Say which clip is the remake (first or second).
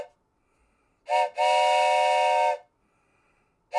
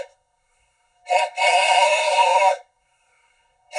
second